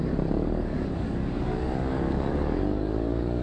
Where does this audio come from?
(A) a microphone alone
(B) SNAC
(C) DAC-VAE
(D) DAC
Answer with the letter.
D